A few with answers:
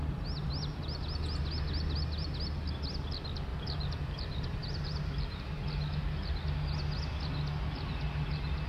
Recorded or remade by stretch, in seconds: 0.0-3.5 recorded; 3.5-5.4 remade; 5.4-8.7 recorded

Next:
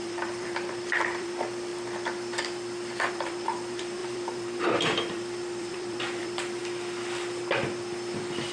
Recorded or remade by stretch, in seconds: 0.0-1.7 remade; 1.7-3.1 recorded; 3.1-6.6 remade; 6.6-8.1 recorded; 8.1-8.5 remade

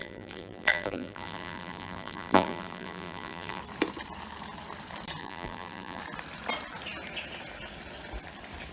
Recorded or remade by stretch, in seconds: 0.0-3.6 remade; 3.6-5.2 recorded; 5.2-6.0 remade; 6.0-8.7 recorded